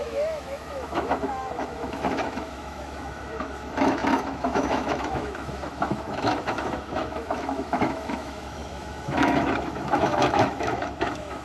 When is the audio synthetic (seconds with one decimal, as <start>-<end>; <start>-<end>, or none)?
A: 0.0-11.4